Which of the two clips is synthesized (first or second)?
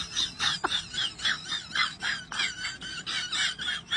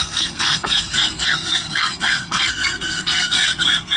second